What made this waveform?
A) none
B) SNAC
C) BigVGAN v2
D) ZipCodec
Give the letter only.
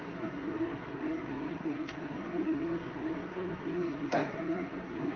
B